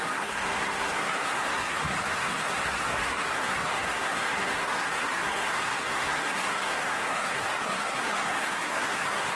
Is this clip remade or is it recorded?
remade